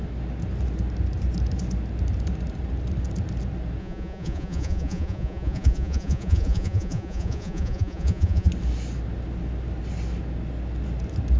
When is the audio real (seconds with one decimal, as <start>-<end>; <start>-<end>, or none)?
0.0-3.8; 8.5-11.4